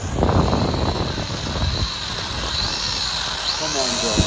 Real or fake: real